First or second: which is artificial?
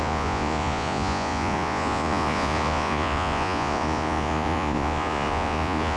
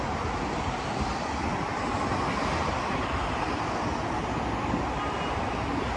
first